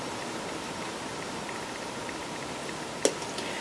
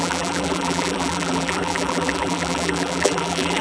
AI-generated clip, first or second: second